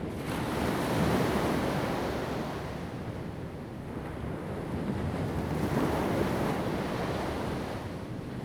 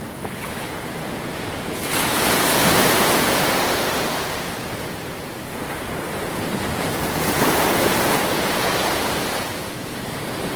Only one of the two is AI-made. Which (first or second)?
second